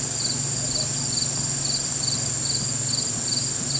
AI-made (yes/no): no